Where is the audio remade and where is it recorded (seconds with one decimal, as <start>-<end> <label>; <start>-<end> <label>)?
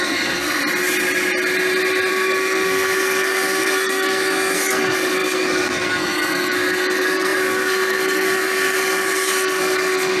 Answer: 0.0-0.6 remade; 0.6-2.1 recorded; 2.1-10.2 remade